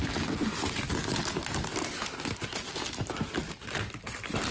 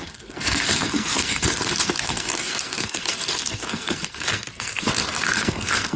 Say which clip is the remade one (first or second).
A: second